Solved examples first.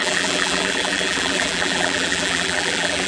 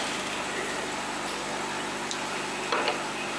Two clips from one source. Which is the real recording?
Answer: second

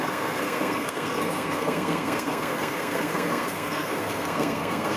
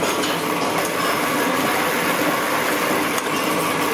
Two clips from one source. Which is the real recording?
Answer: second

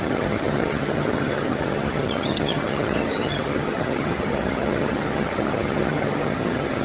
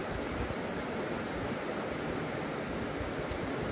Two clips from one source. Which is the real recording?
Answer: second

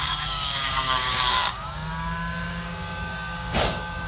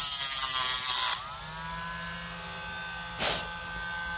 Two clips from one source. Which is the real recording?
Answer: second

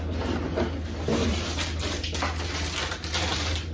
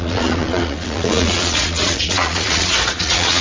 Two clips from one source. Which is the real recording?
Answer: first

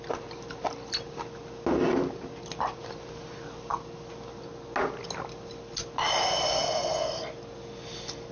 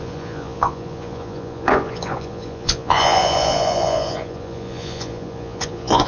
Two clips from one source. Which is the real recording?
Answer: first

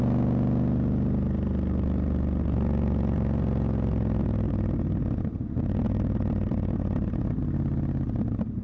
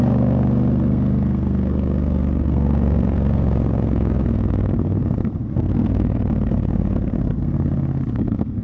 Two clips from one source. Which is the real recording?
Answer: first